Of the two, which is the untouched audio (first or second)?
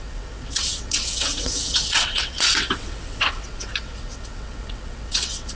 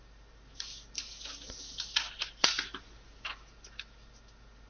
second